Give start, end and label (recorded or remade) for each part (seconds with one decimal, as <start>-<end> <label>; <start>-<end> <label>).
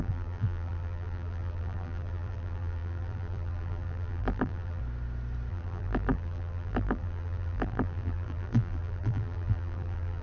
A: 0.0-4.8 remade; 4.8-5.5 recorded; 5.5-10.2 remade